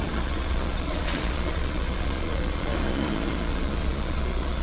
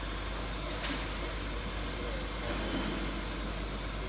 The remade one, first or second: first